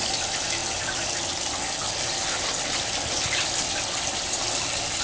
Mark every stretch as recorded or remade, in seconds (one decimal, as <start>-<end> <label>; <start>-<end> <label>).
0.0-5.0 recorded